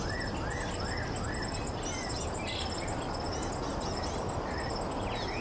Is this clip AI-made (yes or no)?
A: no